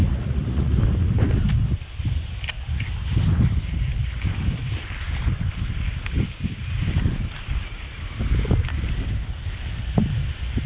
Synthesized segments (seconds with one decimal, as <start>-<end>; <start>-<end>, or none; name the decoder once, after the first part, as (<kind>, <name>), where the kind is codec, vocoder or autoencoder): 0.0-0.8 (vocoder, Vocos)